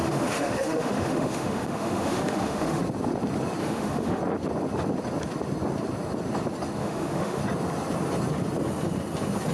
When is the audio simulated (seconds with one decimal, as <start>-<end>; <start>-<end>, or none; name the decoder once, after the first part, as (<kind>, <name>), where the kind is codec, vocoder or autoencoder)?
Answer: 0.0-2.8 (autoencoder, DAC-VAE); 3.6-4.2; 6.8-7.4